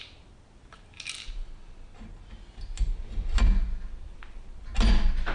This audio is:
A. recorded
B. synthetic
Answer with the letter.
A